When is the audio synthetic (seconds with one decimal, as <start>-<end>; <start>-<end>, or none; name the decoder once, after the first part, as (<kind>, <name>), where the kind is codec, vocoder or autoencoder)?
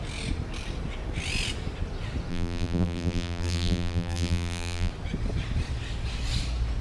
2.3-4.9 (vocoder, BigVGAN v2)